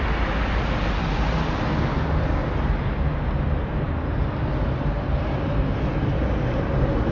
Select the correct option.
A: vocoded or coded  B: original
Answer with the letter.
B